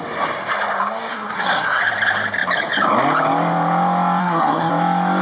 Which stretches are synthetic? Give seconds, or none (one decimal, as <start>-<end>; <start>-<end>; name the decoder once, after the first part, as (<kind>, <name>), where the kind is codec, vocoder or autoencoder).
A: 1.1-1.8 (codec, SNAC); 4.2-4.7